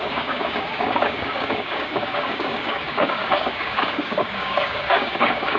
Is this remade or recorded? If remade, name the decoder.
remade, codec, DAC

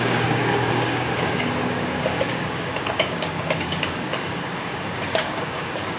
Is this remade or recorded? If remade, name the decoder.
remade, codec, DAC